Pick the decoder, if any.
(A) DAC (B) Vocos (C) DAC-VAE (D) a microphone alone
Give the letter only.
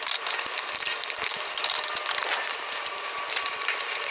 D